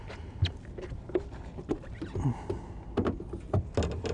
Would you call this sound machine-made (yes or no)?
no